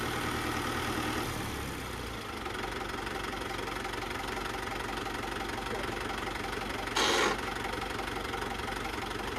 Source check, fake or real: real